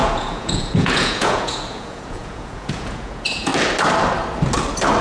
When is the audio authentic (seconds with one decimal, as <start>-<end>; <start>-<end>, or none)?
3.5-5.0